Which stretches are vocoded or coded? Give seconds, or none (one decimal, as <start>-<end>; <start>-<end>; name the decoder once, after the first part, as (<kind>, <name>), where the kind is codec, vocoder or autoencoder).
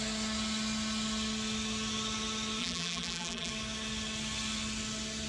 2.6-3.5 (vocoder, BigVGAN v2)